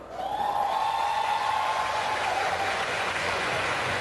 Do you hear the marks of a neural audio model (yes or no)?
yes